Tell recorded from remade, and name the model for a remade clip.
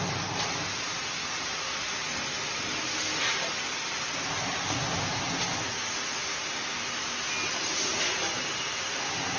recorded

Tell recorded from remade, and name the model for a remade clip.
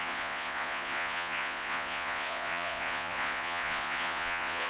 remade, vocoder, Vocos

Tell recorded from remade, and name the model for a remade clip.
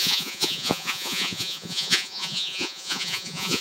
remade, vocoder, Vocos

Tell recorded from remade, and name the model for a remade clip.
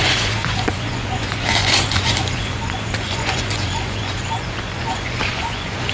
remade, vocoder, Vocos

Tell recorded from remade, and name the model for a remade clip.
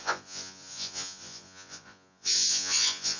remade, vocoder, Vocos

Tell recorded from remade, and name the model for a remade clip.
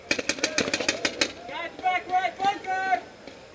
recorded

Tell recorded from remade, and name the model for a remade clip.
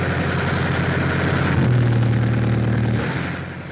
recorded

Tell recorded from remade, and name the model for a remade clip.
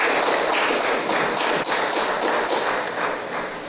recorded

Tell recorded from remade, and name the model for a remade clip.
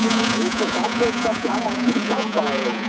remade, vocoder, Vocos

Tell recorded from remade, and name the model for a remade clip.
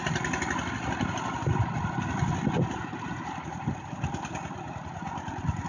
recorded